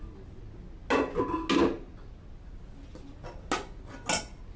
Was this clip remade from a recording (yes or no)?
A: no